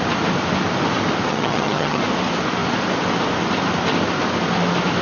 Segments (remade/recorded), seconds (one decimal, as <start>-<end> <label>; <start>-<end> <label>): 0.0-1.3 recorded; 1.3-2.0 remade; 2.0-5.0 recorded